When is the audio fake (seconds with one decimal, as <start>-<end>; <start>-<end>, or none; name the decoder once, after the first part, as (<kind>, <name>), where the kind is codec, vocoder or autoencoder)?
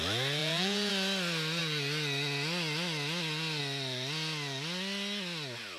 0.4-0.9 (vocoder, Vocos)